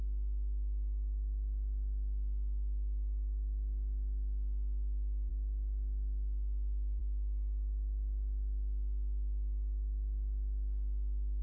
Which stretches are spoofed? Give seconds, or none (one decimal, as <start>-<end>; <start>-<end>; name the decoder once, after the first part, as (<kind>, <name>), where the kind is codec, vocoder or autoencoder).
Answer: 5.3-7.0 (autoencoder, DAC-VAE)